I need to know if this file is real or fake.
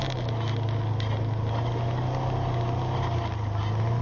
real